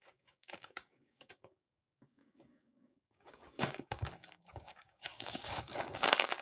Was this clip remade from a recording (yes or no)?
yes